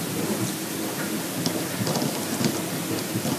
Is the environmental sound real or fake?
real